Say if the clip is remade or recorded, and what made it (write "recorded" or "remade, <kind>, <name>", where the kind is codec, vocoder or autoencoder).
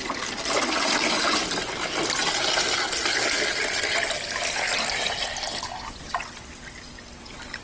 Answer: recorded